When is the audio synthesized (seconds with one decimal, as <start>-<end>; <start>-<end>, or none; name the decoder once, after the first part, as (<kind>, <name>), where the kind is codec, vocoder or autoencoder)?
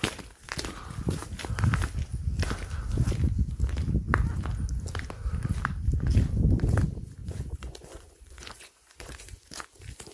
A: 7.2-9.5 (vocoder, Vocos)